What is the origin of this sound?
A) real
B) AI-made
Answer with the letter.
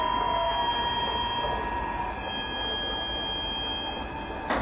A